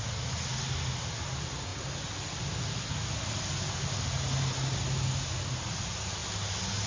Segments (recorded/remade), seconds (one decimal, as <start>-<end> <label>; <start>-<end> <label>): 0.0-6.9 recorded